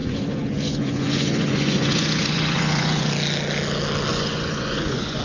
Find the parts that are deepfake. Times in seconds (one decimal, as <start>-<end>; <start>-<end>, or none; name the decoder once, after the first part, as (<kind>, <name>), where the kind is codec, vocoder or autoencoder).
0.0-3.1 (vocoder, Vocos); 4.1-5.2